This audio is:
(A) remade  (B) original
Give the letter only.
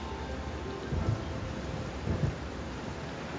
B